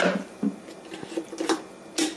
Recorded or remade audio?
recorded